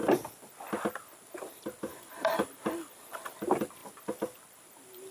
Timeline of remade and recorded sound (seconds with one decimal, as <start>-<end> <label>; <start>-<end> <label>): 0.0-1.9 recorded; 1.9-3.4 remade; 3.4-5.1 recorded